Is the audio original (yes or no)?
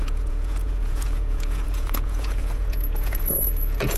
no